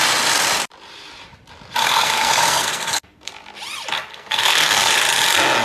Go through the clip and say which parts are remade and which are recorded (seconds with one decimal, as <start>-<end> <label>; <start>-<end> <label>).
0.0-1.8 recorded; 1.8-3.3 remade; 3.3-4.1 recorded; 4.1-5.0 remade; 5.0-5.6 recorded